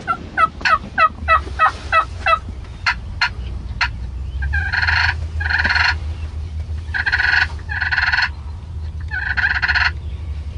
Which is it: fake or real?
real